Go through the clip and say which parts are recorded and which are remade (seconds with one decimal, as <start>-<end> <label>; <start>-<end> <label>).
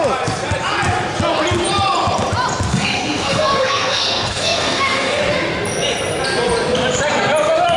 0.0-2.7 recorded; 2.7-5.2 remade; 5.2-7.8 recorded